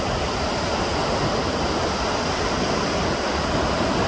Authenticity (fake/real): real